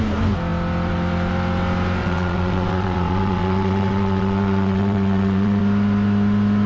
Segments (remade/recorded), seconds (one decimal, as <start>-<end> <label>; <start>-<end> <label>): 0.0-2.0 recorded; 2.0-5.6 remade; 5.6-6.7 recorded